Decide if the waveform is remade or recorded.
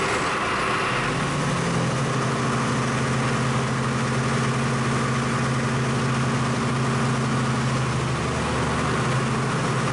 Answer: recorded